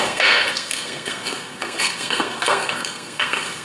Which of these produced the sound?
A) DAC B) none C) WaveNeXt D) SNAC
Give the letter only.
D